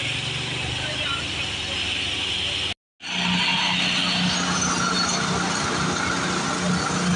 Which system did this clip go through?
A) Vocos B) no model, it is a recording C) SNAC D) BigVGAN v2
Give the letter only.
B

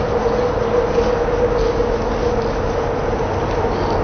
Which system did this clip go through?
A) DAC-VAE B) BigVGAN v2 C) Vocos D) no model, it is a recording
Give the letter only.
D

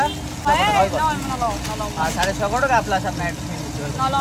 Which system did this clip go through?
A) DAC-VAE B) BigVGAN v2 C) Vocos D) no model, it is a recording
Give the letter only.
D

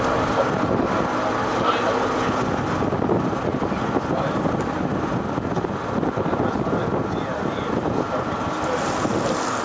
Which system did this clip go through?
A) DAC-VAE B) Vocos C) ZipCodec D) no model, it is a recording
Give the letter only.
D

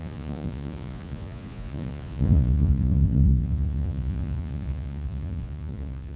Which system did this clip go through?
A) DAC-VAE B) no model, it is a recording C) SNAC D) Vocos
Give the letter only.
D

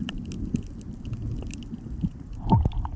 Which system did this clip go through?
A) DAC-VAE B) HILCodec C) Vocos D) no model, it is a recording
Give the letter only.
D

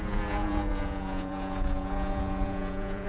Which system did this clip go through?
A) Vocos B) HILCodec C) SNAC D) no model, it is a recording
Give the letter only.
A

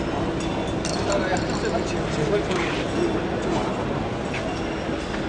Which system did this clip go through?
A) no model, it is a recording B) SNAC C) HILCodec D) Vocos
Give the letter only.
A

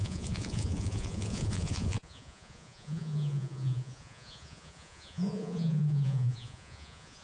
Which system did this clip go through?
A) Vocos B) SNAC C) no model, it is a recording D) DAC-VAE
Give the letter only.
A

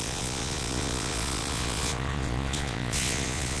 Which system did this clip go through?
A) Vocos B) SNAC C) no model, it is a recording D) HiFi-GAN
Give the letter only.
A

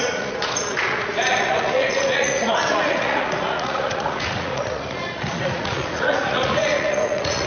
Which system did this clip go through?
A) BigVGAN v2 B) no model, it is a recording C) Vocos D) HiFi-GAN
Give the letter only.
C